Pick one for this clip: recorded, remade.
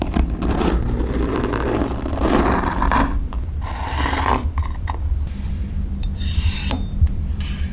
remade